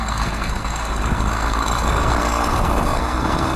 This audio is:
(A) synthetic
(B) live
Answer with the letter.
A